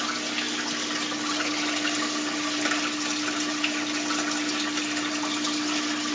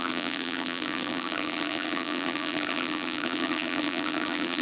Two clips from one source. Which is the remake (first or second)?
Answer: second